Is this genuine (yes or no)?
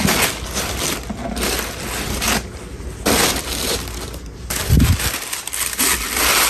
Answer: yes